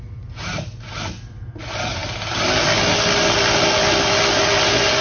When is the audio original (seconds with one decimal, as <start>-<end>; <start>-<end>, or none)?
0.0-5.0